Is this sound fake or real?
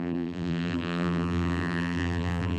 fake